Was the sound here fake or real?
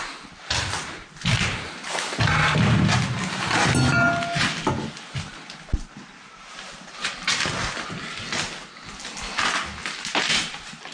real